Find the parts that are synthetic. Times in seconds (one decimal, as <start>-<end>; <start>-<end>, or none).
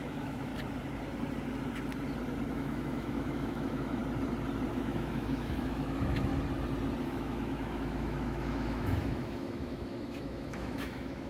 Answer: 0.0-0.5; 2.5-4.0; 4.7-6.3; 7.0-11.3